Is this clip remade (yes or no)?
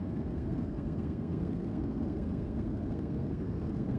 yes